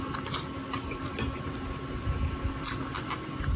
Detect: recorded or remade recorded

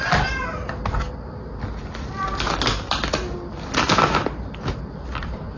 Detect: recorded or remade recorded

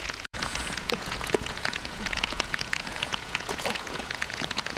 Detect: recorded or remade remade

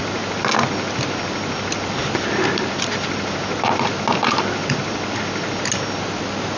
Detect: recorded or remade recorded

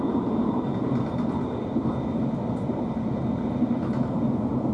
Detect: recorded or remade recorded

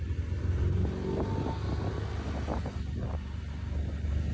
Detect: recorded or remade recorded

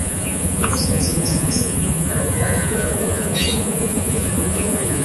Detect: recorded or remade remade